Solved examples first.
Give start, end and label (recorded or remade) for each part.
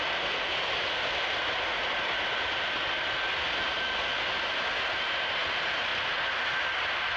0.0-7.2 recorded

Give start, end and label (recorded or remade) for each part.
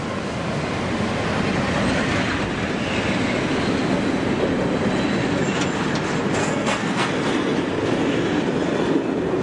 0.0-6.4 recorded; 6.4-7.1 remade; 7.1-9.4 recorded